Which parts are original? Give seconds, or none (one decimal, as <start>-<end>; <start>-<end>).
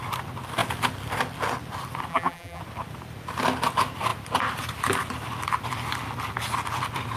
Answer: 0.0-2.1; 2.6-7.2